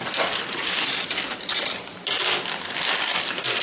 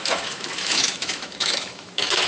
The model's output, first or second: second